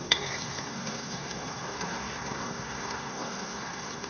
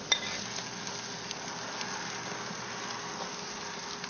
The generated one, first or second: first